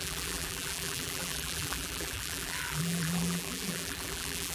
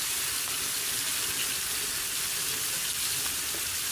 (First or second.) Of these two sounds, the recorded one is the second